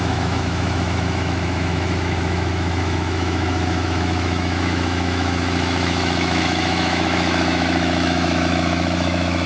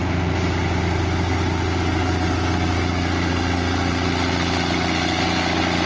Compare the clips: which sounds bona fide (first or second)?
second